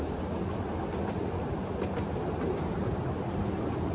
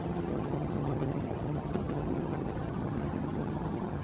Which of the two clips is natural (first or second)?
first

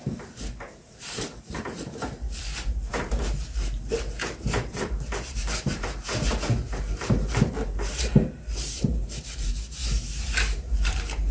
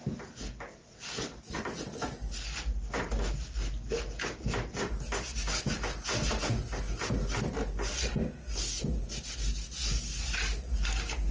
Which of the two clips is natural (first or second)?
second